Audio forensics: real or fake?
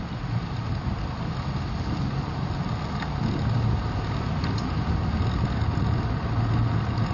real